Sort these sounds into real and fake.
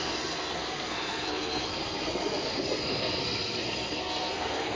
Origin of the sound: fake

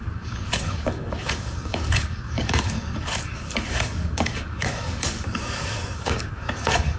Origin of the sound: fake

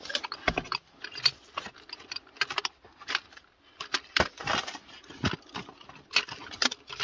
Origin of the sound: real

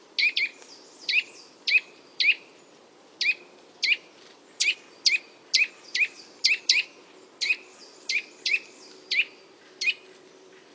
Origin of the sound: real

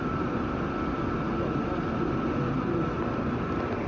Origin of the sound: real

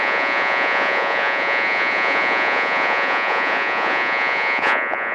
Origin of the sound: fake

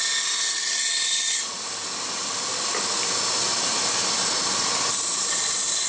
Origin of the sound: real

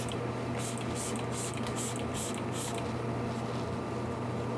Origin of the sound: real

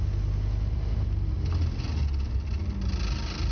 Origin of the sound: real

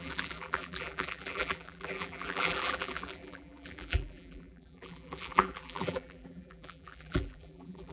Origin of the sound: fake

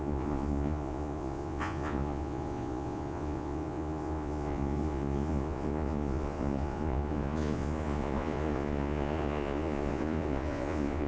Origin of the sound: fake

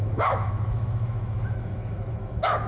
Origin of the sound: fake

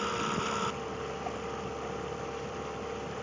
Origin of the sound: real